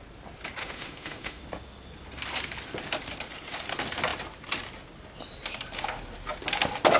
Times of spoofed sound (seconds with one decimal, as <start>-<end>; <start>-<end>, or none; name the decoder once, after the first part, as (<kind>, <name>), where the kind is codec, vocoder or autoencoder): 0.6-1.4 (autoencoder, DAC-VAE)